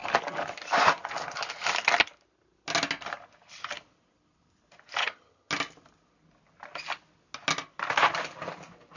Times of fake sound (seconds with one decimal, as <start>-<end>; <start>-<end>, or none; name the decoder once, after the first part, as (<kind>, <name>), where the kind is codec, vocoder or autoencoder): 5.0-5.5 (vocoder, HiFi-GAN)